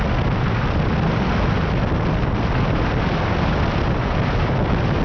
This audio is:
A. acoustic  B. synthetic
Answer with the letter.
A